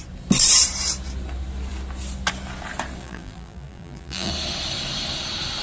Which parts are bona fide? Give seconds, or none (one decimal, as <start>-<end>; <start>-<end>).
0.0-3.0; 4.3-5.6